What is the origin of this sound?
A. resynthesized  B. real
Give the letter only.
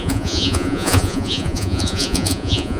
A